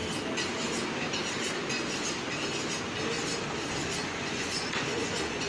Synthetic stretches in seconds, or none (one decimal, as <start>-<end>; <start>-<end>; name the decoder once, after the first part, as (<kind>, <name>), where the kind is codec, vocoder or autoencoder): 4.0-5.5 (vocoder, Vocos)